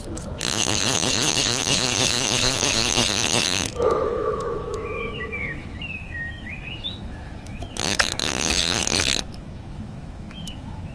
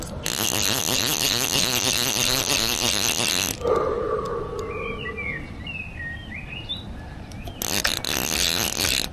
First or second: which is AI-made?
first